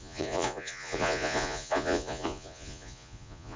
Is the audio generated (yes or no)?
yes